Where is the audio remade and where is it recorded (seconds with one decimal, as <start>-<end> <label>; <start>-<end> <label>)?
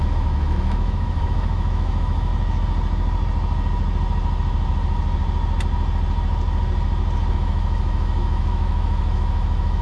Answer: 0.0-2.3 remade; 2.3-7.3 recorded; 7.3-9.8 remade